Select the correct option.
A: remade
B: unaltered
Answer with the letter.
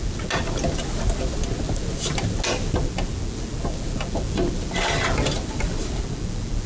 B